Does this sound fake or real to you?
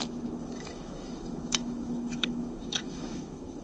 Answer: fake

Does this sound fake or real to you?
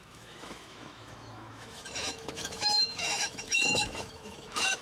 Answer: fake